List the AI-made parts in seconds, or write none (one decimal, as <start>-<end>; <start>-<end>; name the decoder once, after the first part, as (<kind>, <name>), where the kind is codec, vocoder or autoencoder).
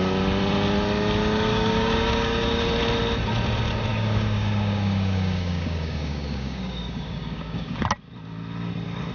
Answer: 1.5-2.6 (codec, DAC); 3.9-7.8